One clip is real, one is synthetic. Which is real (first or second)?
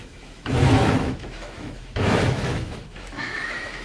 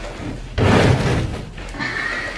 second